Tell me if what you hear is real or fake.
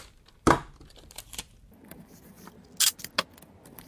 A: real